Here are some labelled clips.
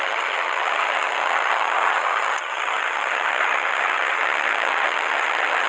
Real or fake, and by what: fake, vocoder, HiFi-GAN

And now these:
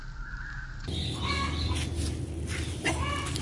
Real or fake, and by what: real